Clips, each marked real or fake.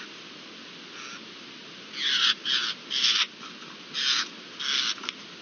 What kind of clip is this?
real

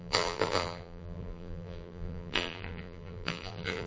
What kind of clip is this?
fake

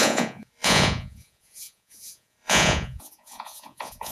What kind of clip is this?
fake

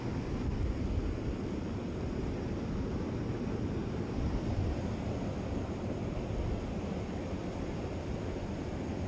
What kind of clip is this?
real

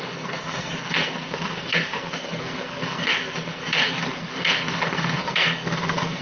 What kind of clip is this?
fake